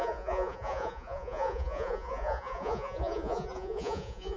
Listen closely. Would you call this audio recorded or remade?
remade